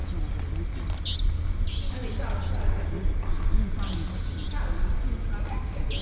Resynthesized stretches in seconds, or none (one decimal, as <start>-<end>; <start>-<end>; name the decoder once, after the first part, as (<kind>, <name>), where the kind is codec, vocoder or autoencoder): none